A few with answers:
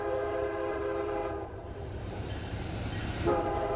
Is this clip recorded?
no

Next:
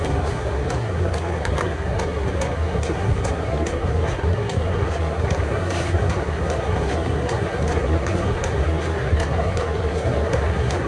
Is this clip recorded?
no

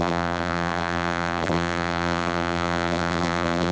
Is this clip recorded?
no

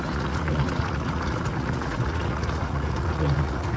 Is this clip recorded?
no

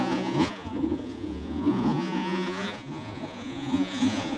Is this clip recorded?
no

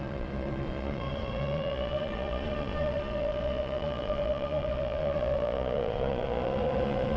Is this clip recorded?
no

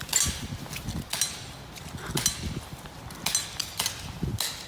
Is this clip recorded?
yes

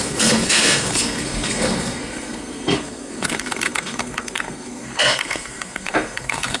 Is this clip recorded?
no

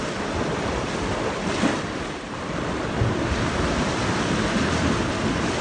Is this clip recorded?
yes